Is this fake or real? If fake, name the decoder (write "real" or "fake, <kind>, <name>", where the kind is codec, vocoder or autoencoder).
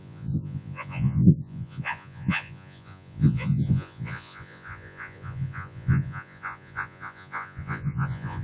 fake, vocoder, Vocos